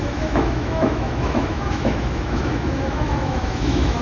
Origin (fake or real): fake